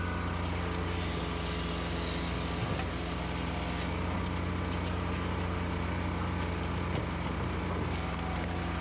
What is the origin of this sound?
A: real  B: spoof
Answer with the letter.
A